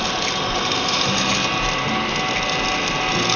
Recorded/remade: recorded